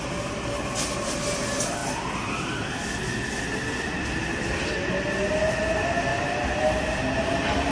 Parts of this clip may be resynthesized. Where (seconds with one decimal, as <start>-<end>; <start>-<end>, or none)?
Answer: none